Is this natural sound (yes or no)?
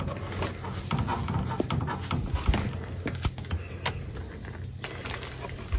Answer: yes